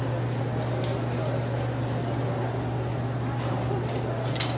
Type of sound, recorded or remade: recorded